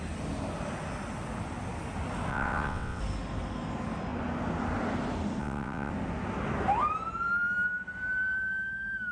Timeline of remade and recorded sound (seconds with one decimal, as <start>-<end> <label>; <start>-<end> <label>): 0.0-2.3 recorded; 2.3-3.0 remade; 3.0-5.4 recorded; 5.4-5.9 remade; 5.9-9.1 recorded